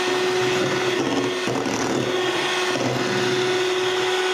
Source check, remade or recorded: recorded